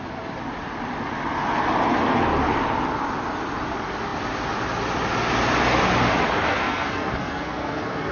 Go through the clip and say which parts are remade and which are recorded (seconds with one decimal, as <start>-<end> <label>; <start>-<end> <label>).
0.0-6.5 recorded; 6.5-8.1 remade